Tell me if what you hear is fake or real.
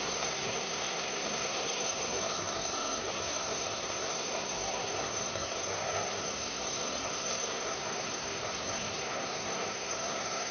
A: fake